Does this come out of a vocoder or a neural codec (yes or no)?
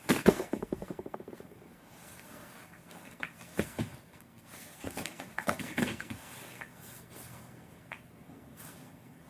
yes